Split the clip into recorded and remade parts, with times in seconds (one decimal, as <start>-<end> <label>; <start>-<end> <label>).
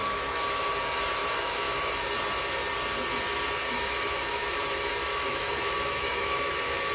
0.0-0.7 remade; 0.7-1.2 recorded; 1.2-1.9 remade; 1.9-3.6 recorded; 3.6-4.6 remade; 4.6-5.1 recorded; 5.1-6.9 remade